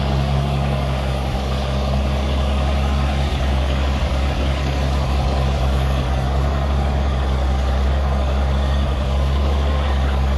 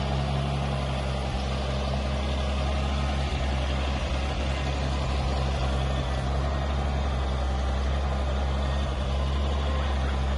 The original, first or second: second